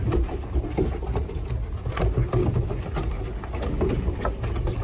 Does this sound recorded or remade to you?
recorded